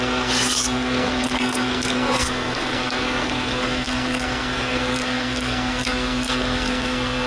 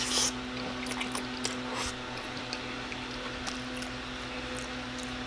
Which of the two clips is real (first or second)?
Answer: second